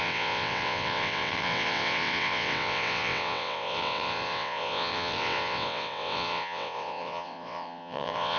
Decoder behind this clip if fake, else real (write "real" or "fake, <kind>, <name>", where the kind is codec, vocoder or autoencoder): fake, vocoder, WaveNeXt